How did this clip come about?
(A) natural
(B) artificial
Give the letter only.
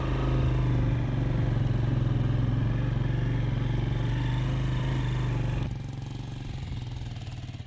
A